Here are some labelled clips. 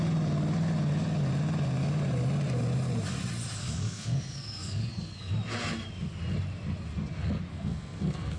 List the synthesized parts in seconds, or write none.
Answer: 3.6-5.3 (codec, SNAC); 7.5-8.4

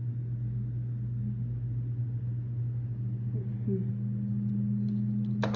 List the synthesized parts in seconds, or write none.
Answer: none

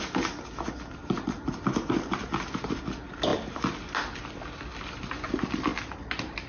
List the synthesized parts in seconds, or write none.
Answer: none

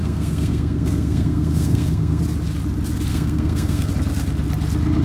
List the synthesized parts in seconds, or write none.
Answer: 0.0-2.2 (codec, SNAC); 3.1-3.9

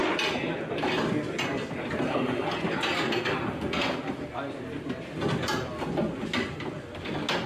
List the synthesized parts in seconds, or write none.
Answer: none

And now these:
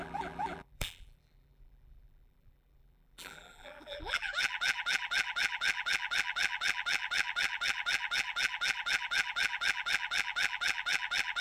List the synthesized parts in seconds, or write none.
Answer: 0.0-11.4 (vocoder, BigVGAN v2)

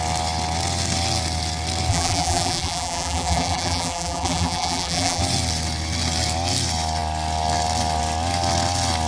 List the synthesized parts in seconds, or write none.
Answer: 1.9-5.2 (vocoder, BigVGAN v2)